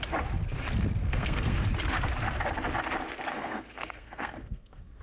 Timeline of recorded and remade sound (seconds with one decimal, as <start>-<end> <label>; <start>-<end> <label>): 0.0-1.0 recorded; 1.0-1.6 remade; 1.6-3.3 recorded; 3.3-5.0 remade